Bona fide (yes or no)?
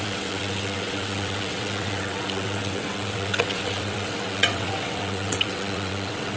no